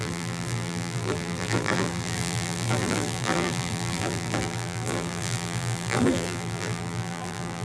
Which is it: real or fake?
fake